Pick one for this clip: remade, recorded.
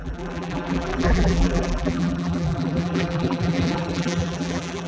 remade